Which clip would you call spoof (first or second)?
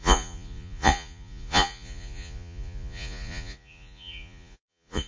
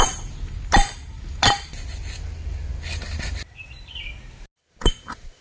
first